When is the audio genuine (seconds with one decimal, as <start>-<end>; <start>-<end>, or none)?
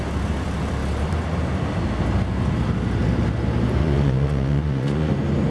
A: 0.0-3.8; 5.1-5.5